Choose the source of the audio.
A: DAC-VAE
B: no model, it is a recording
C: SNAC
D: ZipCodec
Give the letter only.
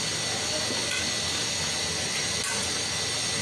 B